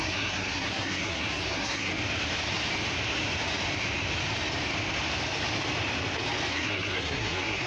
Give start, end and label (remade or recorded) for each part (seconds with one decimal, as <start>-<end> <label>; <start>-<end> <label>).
0.0-1.9 remade; 1.9-6.5 recorded; 6.5-7.7 remade

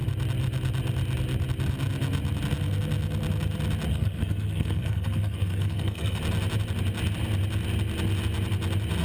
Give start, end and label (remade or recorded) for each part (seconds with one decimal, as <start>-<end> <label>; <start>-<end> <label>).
0.0-3.9 recorded; 3.9-6.2 remade; 6.2-9.0 recorded

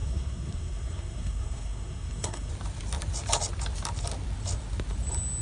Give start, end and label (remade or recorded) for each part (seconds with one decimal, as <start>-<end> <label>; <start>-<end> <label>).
0.0-2.5 remade; 2.5-5.4 recorded

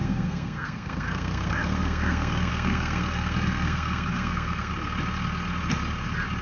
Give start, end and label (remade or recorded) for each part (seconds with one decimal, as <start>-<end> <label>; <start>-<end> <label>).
0.0-4.7 remade; 4.7-6.4 recorded

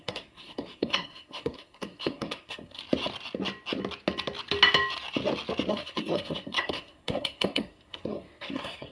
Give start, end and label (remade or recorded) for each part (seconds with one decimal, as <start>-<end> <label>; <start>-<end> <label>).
0.0-2.8 remade; 2.8-5.7 recorded; 5.7-8.9 remade

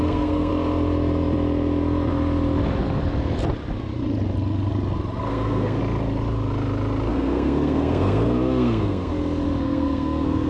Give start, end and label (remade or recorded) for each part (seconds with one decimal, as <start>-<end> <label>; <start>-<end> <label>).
0.0-0.5 remade; 0.5-5.3 recorded; 5.3-5.8 remade; 5.8-7.1 recorded; 7.1-9.1 remade; 9.1-9.6 recorded; 9.6-10.5 remade

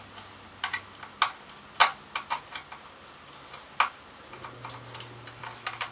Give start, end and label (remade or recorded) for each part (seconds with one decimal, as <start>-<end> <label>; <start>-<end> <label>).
0.0-5.9 recorded

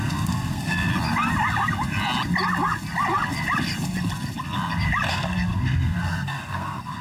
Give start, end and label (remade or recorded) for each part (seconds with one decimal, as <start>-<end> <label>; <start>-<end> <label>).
0.0-0.9 remade; 0.9-5.1 recorded; 5.1-7.0 remade